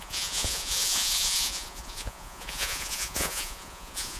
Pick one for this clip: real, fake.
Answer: fake